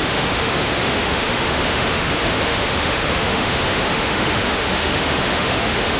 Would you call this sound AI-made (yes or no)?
yes